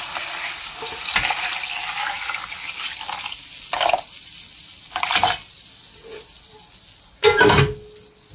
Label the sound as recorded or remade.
recorded